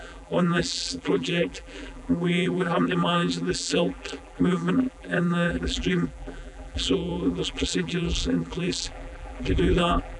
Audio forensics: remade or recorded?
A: remade